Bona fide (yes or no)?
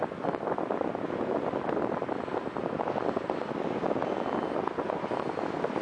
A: yes